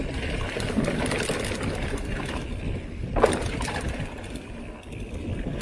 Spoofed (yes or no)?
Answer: no